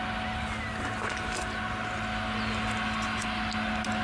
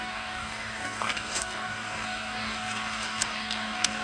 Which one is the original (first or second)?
first